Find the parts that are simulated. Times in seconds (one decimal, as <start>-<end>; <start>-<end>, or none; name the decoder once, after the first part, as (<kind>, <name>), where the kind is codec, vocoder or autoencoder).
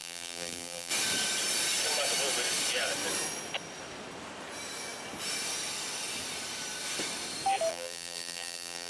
0.0-0.9 (vocoder, BigVGAN v2); 7.7-8.9